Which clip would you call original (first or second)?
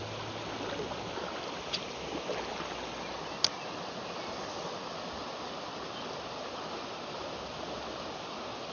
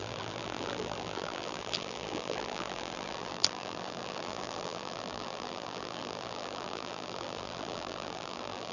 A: first